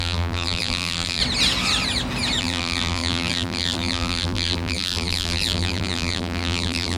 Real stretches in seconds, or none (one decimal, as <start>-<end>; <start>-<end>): 1.2-2.4